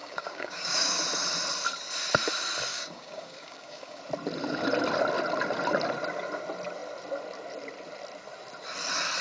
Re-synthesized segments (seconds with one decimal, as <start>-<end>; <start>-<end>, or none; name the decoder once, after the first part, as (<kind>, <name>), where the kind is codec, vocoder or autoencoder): 0.0-1.0 (codec, DAC); 2.7-4.0